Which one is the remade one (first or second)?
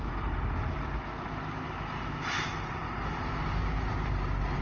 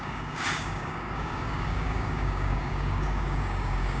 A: second